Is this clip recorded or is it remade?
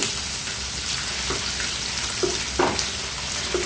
recorded